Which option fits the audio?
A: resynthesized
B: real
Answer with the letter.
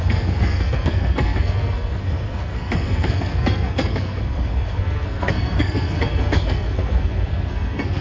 A